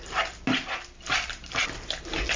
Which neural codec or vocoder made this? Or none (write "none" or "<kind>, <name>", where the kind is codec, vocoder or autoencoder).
none